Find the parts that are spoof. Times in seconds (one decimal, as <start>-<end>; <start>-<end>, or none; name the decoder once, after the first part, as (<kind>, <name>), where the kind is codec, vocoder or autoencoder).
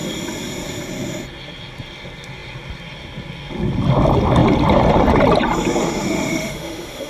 5.8-7.1 (autoencoder, DAC-VAE)